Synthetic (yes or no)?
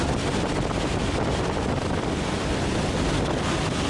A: no